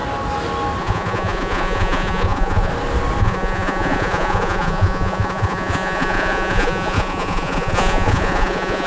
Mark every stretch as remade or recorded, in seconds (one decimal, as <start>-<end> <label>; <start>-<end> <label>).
0.0-0.8 recorded; 0.8-2.7 remade; 2.7-3.2 recorded; 3.2-8.9 remade